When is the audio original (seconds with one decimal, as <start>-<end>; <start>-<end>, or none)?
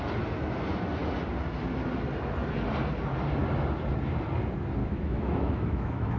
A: 0.0-4.8